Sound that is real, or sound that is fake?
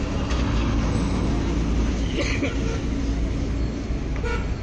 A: real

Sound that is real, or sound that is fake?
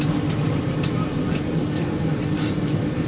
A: real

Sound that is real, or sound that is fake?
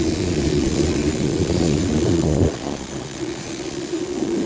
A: fake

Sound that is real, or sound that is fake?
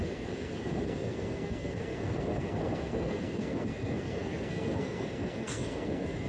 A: fake